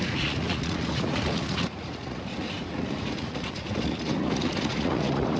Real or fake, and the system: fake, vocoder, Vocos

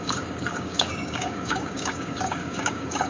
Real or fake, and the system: fake, codec, DAC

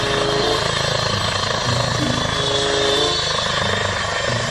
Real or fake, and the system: real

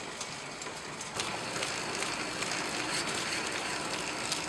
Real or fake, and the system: real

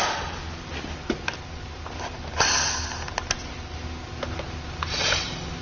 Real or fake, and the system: real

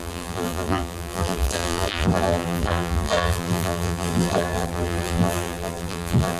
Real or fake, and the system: fake, vocoder, BigVGAN v2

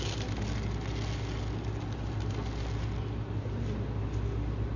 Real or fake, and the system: real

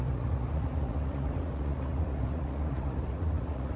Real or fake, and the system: fake, vocoder, Vocos